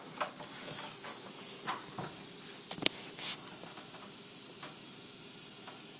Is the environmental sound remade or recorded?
recorded